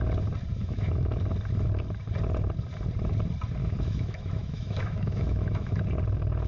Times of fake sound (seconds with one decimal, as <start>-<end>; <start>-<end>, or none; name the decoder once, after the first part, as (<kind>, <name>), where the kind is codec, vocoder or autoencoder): 0.5-1.2 (autoencoder, DAC-VAE); 3.6-5.8